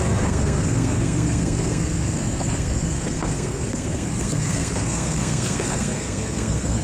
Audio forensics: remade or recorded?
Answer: remade